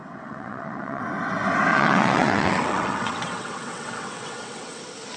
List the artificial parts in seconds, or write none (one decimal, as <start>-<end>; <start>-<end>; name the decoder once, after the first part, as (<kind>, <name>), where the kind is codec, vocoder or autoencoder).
0.0-1.0 (vocoder, WaveNeXt); 1.7-4.8